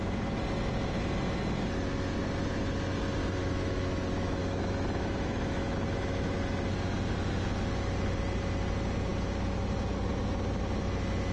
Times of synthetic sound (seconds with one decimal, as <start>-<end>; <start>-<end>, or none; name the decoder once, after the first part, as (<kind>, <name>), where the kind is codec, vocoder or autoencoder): 3.4-6.4 (autoencoder, DAC-VAE)